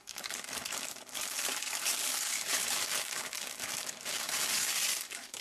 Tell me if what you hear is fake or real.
fake